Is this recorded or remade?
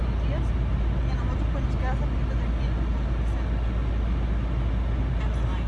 recorded